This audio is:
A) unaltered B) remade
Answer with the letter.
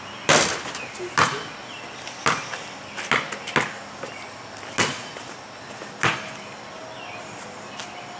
A